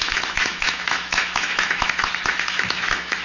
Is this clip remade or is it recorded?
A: remade